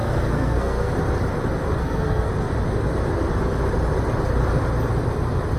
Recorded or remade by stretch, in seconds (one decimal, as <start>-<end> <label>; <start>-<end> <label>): 0.0-0.9 remade; 0.9-1.8 recorded; 1.8-2.3 remade; 2.3-5.6 recorded